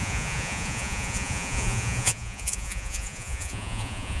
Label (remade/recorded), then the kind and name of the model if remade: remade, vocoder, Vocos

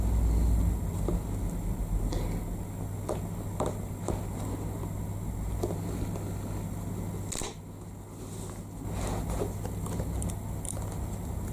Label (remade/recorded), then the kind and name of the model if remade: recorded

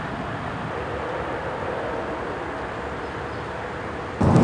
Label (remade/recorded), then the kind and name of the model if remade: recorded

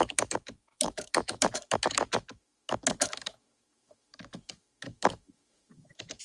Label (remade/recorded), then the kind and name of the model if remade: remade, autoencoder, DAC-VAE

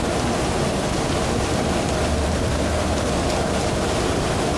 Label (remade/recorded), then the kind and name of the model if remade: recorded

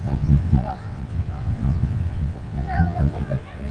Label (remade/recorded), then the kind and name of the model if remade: remade, vocoder, WaveNeXt